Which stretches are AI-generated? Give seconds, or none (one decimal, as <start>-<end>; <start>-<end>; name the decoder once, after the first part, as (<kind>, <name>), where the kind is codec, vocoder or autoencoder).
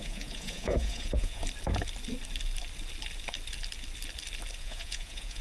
0.0-1.4 (vocoder, Vocos); 4.6-5.4